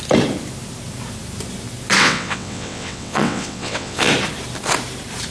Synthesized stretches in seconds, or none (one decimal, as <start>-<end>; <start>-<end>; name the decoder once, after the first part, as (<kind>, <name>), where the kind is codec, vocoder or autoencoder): 2.0-4.1 (vocoder, WaveNeXt)